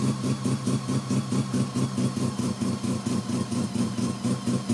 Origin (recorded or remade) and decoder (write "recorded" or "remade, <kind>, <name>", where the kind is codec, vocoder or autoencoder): recorded